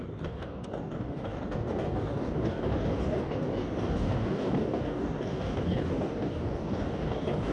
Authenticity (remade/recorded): remade